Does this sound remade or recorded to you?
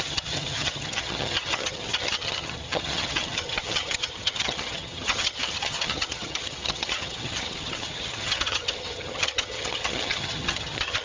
remade